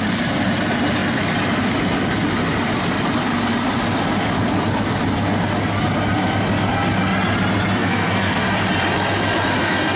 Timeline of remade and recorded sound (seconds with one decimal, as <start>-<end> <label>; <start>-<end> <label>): 0.0-7.8 recorded; 7.8-8.4 remade; 8.4-10.0 recorded